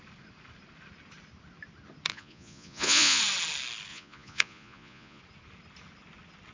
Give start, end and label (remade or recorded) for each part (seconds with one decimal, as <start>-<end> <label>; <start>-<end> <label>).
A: 0.0-2.1 recorded; 2.1-3.2 remade; 3.2-3.9 recorded; 3.9-5.2 remade; 5.2-6.5 recorded